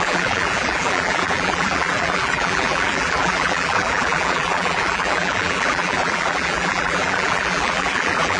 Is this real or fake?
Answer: fake